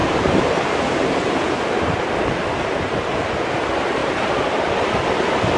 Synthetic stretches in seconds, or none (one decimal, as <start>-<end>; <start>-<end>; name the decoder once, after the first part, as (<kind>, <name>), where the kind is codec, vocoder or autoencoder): 0.0-1.3 (vocoder, BigVGAN v2); 4.0-4.8